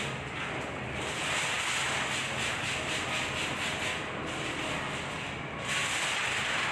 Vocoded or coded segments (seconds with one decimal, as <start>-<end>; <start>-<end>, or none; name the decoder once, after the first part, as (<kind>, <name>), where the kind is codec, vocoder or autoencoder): 0.0-1.8 (vocoder, BigVGAN v2); 5.8-6.7